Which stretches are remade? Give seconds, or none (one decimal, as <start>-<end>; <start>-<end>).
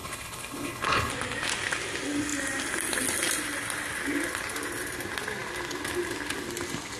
0.0-1.1